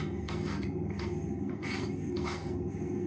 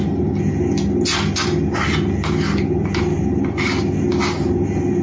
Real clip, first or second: second